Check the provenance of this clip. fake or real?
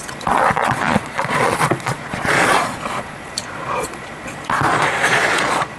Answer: fake